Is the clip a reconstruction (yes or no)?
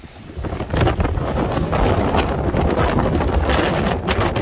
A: no